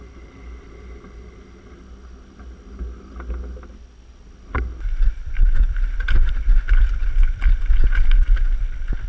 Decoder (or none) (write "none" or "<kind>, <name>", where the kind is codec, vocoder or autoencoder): none